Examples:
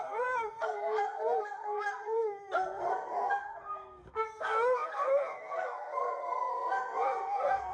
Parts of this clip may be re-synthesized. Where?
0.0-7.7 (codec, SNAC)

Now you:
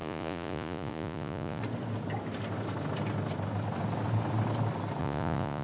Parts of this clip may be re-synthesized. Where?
0.0-1.6 (vocoder, Vocos); 5.0-5.6

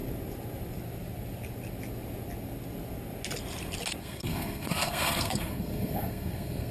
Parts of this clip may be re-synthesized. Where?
4.0-6.7 (codec, SNAC)

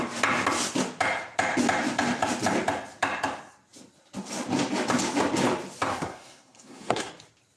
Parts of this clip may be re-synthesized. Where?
5.9-7.1 (codec, SNAC)

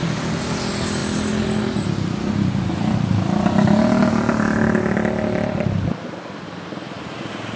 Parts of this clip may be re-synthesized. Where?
4.0-7.6 (vocoder, BigVGAN v2)

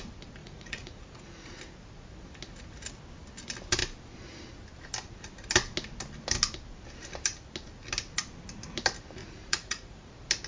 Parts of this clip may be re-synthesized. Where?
0.4-1.6 (vocoder, Vocos); 9.2-10.1

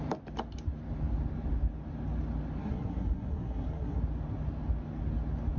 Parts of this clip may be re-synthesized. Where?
2.6-4.0 (codec, SNAC)

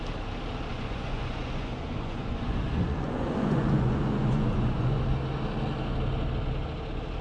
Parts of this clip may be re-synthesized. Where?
0.7-5.0 (vocoder, Vocos)